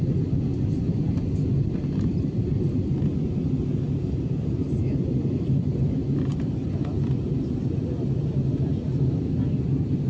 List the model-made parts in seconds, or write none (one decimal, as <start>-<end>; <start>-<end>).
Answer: none